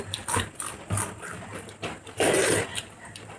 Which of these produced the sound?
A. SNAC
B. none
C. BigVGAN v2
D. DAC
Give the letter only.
C